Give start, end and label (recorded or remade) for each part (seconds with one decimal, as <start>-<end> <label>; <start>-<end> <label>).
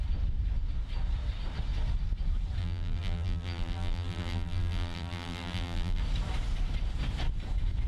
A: 0.0-2.6 recorded; 2.6-6.0 remade; 6.0-7.9 recorded